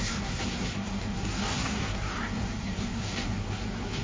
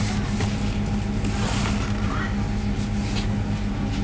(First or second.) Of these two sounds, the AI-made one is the first